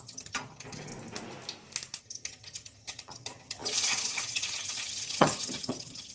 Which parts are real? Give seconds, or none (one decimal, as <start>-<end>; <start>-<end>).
0.9-2.0